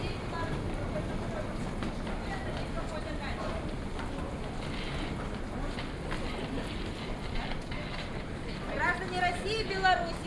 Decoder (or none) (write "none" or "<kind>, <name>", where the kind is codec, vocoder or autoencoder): none